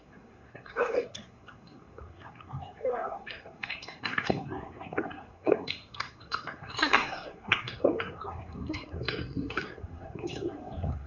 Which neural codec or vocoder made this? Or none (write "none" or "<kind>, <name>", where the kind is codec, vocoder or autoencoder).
codec, SNAC